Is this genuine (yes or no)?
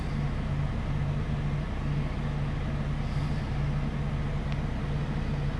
yes